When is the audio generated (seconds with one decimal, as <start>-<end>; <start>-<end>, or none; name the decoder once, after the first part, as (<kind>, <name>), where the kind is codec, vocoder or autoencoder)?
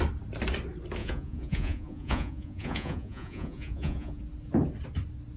1.0-4.2 (vocoder, Vocos)